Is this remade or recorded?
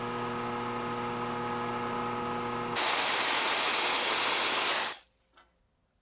recorded